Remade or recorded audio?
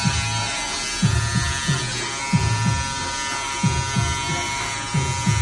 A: recorded